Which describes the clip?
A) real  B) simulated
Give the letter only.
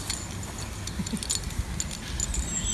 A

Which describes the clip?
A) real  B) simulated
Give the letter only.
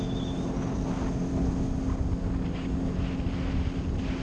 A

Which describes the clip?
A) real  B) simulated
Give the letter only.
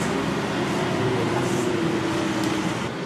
A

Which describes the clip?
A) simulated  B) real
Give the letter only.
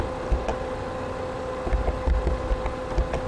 B